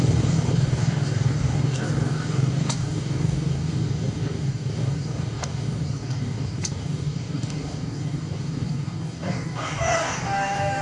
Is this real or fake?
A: fake